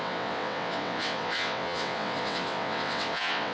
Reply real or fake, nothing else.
fake